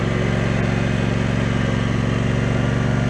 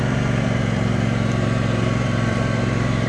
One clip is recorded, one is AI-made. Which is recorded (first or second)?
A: first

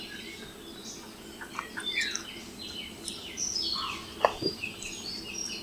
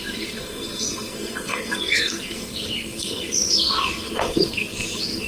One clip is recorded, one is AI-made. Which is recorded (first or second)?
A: first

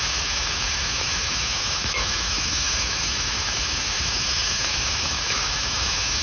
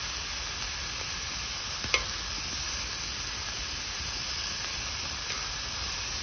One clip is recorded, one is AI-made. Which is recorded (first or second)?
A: second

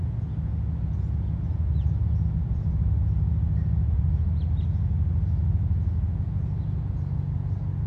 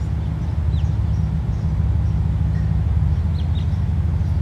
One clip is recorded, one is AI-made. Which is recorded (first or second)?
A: second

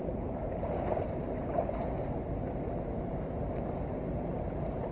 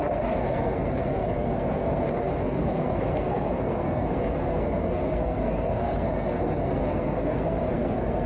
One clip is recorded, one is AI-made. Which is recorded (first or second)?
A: first